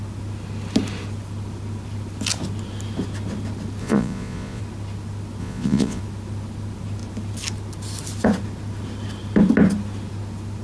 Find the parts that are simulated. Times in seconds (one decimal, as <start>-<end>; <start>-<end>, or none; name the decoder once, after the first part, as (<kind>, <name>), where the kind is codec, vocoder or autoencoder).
3.8-4.6 (vocoder, Vocos); 5.4-6.0